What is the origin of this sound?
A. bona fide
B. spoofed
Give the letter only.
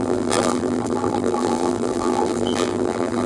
B